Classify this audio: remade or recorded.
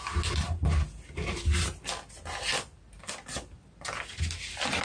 recorded